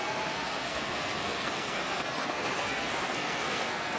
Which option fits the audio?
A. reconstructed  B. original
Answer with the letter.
A